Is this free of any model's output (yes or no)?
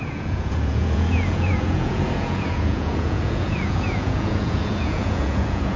no